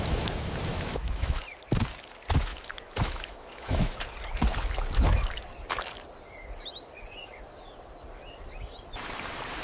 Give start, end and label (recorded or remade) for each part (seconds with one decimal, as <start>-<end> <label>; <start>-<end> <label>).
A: 0.0-0.7 recorded; 0.7-1.4 remade; 1.4-2.5 recorded; 2.5-4.0 remade; 4.0-9.6 recorded